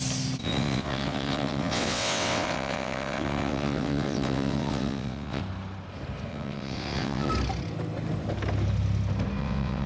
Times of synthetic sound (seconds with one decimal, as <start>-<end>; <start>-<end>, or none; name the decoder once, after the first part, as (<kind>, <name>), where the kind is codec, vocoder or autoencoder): 0.4-5.4 (vocoder, WaveNeXt); 6.3-7.3; 9.4-9.9